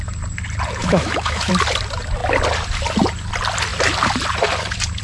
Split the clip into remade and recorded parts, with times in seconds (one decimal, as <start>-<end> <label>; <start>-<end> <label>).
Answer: 0.0-0.8 recorded; 0.8-1.5 remade; 1.5-5.0 recorded